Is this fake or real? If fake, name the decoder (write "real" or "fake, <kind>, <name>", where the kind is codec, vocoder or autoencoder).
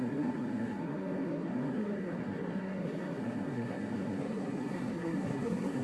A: fake, codec, SNAC